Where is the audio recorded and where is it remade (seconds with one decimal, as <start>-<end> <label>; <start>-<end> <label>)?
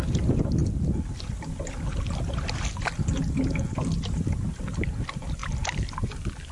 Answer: 0.0-6.5 recorded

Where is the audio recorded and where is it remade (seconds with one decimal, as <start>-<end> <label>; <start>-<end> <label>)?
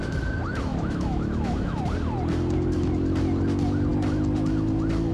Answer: 0.0-0.7 recorded; 0.7-1.8 remade; 1.8-5.1 recorded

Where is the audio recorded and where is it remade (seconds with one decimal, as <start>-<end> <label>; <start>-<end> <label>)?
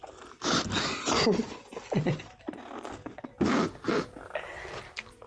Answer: 0.0-5.3 recorded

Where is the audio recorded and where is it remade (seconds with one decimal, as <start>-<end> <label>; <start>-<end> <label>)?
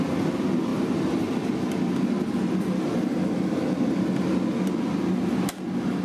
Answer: 0.0-6.0 recorded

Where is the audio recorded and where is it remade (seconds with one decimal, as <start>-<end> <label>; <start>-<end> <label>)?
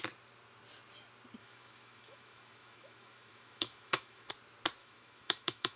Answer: 0.0-1.4 recorded; 1.4-4.3 remade; 4.3-4.8 recorded; 4.8-5.8 remade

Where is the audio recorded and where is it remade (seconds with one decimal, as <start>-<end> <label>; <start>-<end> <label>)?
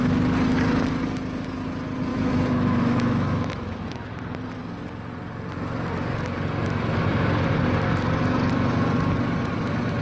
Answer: 0.0-2.1 recorded; 2.1-4.1 remade; 4.1-10.0 recorded